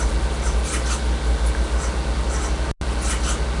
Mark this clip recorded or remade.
recorded